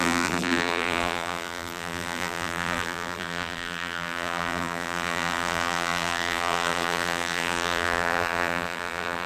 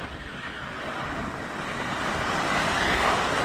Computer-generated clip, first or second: first